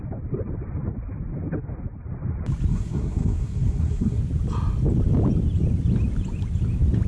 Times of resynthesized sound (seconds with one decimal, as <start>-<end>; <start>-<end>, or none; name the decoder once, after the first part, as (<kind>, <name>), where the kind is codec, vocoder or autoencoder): 2.7-4.2 (codec, SNAC)